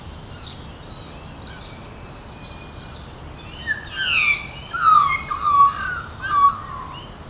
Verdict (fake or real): real